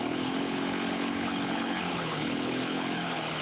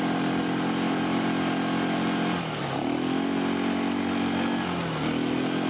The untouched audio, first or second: second